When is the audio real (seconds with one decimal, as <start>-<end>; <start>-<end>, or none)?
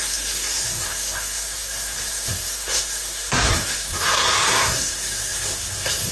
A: none